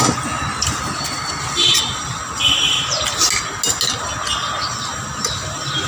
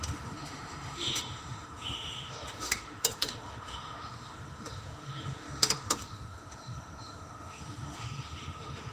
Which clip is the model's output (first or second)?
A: second